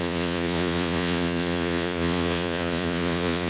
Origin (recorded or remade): remade